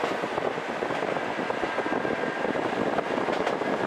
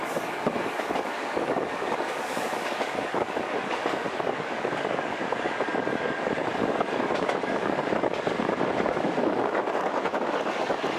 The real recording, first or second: first